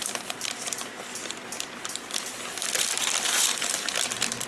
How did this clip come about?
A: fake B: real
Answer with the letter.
A